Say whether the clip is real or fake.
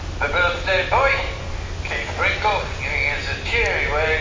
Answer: real